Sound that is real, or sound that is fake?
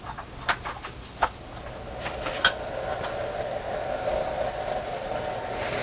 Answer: real